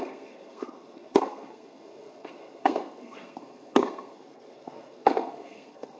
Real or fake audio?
fake